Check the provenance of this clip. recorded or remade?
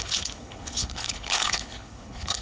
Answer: remade